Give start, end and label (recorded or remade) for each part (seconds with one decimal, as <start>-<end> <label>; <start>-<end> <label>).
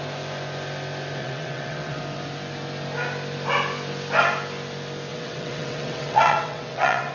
0.0-1.2 recorded; 1.2-2.0 remade; 2.0-5.1 recorded; 5.1-7.1 remade